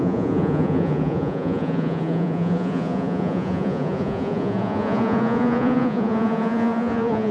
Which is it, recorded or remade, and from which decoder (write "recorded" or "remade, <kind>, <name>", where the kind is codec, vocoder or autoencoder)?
remade, vocoder, Vocos